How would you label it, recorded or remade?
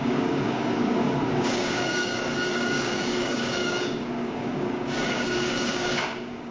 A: remade